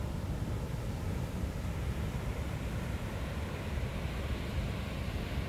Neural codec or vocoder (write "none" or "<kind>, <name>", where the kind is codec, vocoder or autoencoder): vocoder, BigVGAN v2